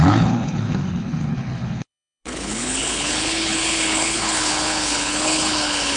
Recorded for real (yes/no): no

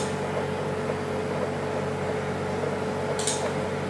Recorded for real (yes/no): yes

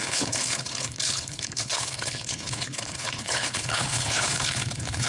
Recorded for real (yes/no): no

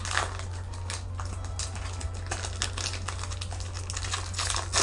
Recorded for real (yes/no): yes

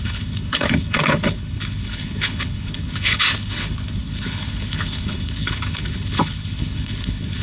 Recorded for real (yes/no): no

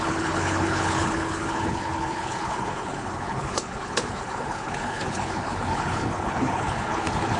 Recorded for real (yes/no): no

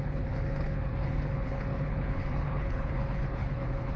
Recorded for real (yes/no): no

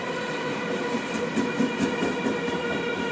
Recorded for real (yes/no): yes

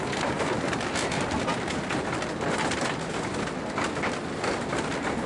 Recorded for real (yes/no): yes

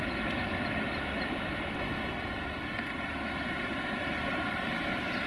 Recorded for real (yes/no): yes